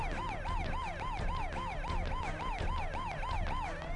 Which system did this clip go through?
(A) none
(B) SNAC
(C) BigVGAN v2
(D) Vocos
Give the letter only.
A